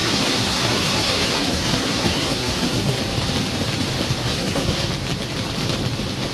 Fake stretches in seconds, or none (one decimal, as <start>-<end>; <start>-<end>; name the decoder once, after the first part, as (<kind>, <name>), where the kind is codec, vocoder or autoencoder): 0.0-3.0 (codec, SNAC); 4.2-4.9